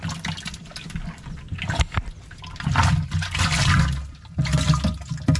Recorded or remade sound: recorded